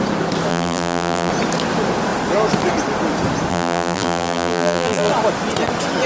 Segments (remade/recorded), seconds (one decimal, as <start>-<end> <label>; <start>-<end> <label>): 0.0-0.5 recorded; 0.5-1.3 remade; 1.3-3.5 recorded; 3.5-5.1 remade; 5.1-6.1 recorded